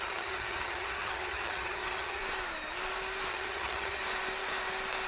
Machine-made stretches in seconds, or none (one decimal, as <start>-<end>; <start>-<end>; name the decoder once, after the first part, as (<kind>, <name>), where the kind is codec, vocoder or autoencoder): 0.0-2.2 (vocoder, HiFi-GAN); 3.3-4.0